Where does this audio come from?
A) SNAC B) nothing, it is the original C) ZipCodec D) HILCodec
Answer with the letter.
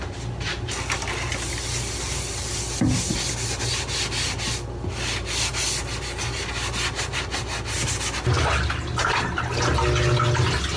B